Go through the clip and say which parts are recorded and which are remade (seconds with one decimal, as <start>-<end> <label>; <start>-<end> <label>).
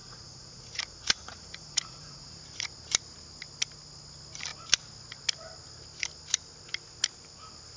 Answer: 0.0-2.4 remade; 2.4-7.8 recorded